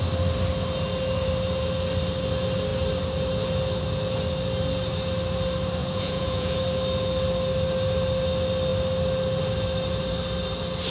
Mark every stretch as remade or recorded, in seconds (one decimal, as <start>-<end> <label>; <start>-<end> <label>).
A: 0.0-5.8 recorded; 5.8-6.6 remade; 6.6-10.9 recorded